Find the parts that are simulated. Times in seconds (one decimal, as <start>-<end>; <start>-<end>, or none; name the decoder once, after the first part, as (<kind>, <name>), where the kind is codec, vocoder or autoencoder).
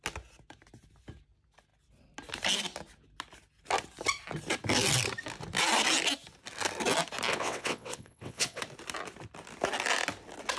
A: 7.3-8.6 (vocoder, WaveNeXt)